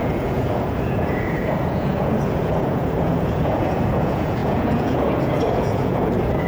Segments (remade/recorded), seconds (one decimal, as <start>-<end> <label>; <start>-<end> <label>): 0.0-6.5 remade

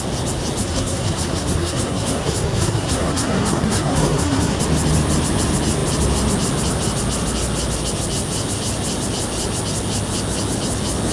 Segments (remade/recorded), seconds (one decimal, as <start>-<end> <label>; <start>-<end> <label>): 0.0-0.6 recorded; 0.6-4.6 remade; 4.6-11.1 recorded